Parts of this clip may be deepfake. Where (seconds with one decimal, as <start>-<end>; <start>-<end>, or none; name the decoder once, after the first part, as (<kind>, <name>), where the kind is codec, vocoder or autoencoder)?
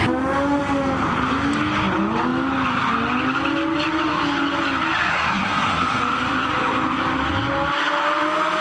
5.1-6.0 (codec, SNAC)